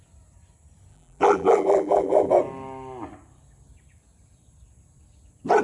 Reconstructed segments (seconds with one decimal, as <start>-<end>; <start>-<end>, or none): 0.9-2.3